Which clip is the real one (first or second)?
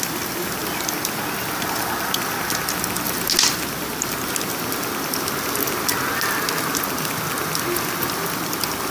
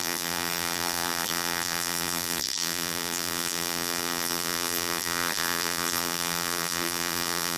first